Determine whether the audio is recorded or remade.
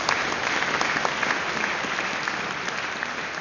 recorded